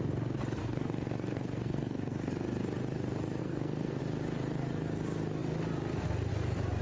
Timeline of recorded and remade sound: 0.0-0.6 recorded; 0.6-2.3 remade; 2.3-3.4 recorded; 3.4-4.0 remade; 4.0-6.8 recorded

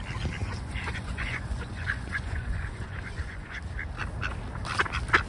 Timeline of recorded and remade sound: 0.0-0.4 recorded; 0.4-3.6 remade; 3.6-5.3 recorded

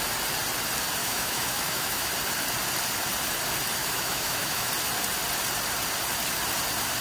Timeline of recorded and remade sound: 0.0-1.0 recorded; 1.0-2.1 remade; 2.1-3.8 recorded; 3.8-4.7 remade; 4.7-7.0 recorded

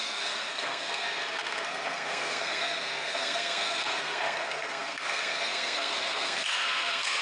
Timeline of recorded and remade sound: 0.0-7.2 remade

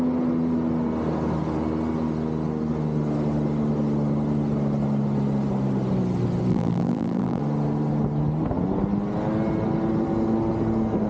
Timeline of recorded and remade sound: 0.0-6.5 recorded; 6.5-7.4 remade; 7.4-11.1 recorded

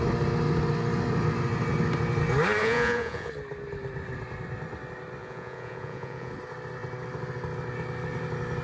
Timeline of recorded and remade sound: 0.0-2.6 recorded; 2.6-3.3 remade; 3.3-5.2 recorded; 5.2-6.3 remade; 6.3-8.6 recorded

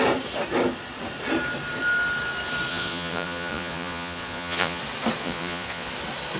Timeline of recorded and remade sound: 0.0-2.7 recorded; 2.7-4.8 remade; 4.8-5.2 recorded; 5.2-5.9 remade; 5.9-6.4 recorded